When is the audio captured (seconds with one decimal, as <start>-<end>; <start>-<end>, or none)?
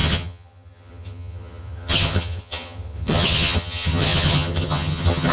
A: none